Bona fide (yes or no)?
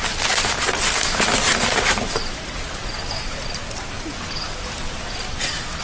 yes